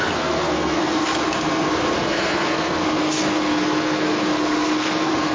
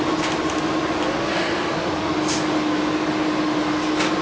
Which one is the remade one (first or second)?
first